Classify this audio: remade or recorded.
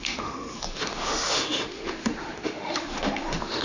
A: remade